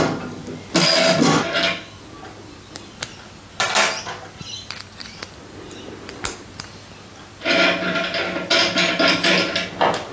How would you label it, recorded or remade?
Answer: recorded